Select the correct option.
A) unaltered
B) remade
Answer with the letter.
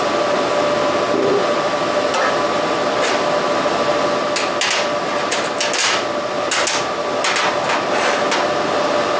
A